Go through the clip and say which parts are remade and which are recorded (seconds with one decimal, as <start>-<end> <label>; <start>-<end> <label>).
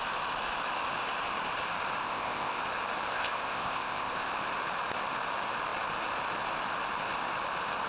0.0-2.0 recorded; 2.0-2.6 remade; 2.6-3.1 recorded; 3.1-4.3 remade; 4.3-7.9 recorded